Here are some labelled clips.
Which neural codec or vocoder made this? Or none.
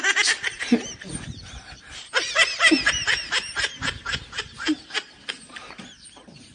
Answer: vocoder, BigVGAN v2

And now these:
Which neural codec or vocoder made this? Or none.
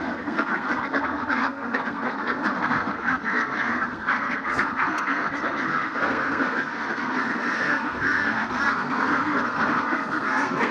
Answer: codec, SNAC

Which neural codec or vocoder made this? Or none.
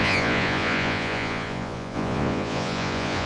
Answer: vocoder, Vocos